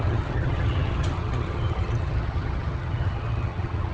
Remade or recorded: remade